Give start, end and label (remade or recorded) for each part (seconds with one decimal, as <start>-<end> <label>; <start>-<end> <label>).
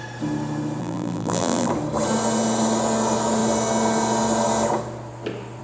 0.0-0.8 recorded; 0.8-1.7 remade; 1.7-5.6 recorded